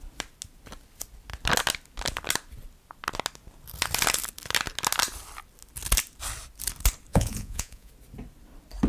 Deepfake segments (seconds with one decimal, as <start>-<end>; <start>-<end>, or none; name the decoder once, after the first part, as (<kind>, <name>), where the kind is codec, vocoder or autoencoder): 7.1-7.9 (vocoder, Vocos)